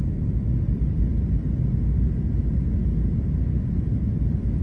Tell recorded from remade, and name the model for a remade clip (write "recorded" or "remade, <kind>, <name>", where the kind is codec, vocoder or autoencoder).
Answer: recorded